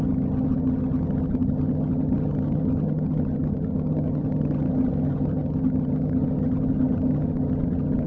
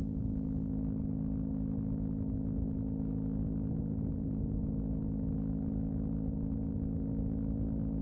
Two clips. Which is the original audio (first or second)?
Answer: second